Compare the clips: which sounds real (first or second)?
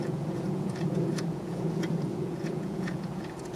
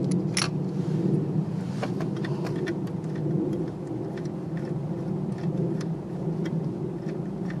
second